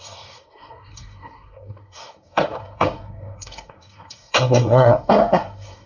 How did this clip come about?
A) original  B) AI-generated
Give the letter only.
B